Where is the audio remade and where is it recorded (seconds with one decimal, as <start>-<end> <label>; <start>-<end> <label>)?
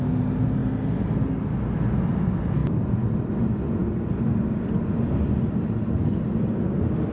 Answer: 0.0-7.1 recorded